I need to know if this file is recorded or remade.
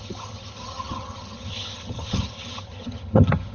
remade